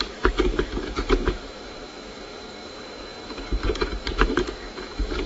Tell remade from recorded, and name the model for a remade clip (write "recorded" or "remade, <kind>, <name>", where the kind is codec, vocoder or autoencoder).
remade, autoencoder, DAC-VAE